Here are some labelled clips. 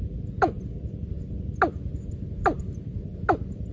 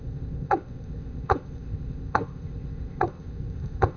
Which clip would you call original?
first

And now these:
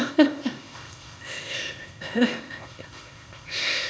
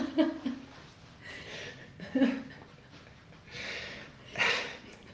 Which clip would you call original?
second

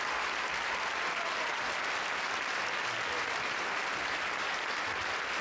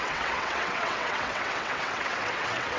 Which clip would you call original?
first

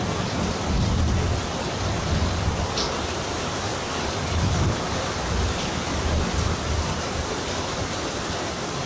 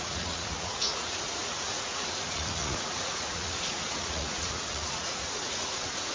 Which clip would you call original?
first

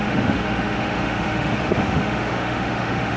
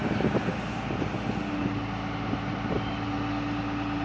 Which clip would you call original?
second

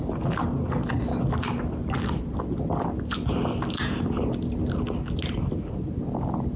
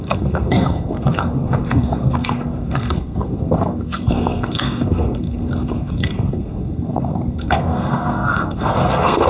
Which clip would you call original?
first